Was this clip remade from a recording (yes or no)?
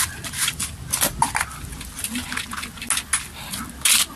no